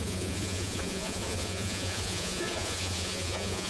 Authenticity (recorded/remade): remade